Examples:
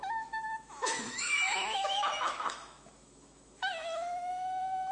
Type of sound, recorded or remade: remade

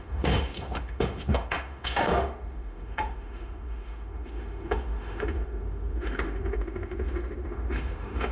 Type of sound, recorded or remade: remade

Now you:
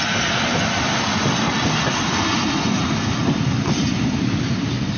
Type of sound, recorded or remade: recorded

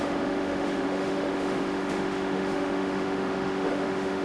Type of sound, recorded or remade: remade